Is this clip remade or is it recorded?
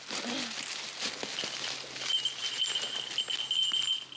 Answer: recorded